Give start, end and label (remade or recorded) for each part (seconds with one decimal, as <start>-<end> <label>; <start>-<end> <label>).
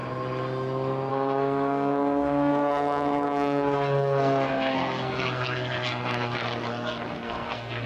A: 0.0-1.1 recorded; 1.1-7.9 remade